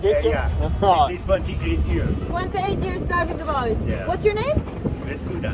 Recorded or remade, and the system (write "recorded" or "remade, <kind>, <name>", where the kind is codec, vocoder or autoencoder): remade, vocoder, BigVGAN v2